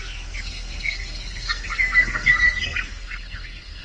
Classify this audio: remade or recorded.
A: remade